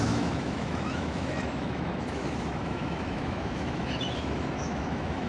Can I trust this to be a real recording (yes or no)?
no